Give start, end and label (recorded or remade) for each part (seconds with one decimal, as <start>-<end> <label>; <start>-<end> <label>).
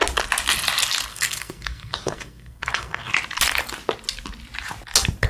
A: 0.0-1.1 recorded; 1.1-3.1 remade; 3.1-5.3 recorded